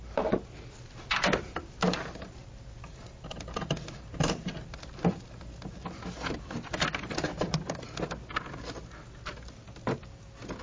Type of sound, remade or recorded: recorded